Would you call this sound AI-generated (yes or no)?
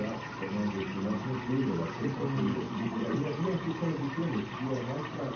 no